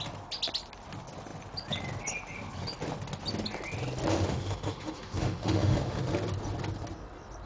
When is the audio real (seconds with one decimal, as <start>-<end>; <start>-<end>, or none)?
0.0-4.1; 6.0-7.5